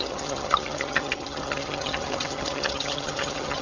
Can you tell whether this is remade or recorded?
remade